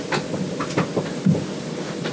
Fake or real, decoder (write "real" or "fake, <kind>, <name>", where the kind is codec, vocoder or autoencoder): real